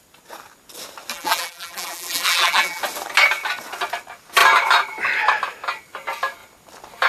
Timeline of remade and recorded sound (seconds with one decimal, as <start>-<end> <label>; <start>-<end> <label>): 0.0-1.1 recorded; 1.1-2.8 remade; 2.8-7.1 recorded